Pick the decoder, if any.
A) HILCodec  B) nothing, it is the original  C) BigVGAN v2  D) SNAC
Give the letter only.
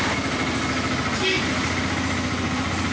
B